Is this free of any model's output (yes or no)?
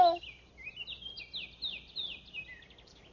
yes